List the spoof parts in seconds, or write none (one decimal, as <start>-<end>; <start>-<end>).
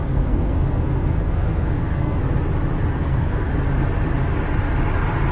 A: 0.0-2.2; 2.9-3.5